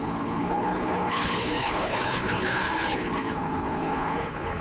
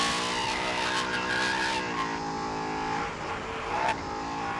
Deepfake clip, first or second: first